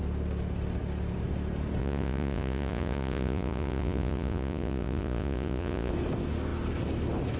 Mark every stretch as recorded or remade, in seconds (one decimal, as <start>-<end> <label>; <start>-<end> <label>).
0.0-1.8 recorded; 1.8-5.9 remade; 5.9-7.4 recorded